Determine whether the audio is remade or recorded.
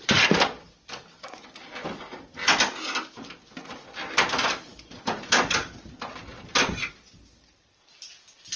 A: recorded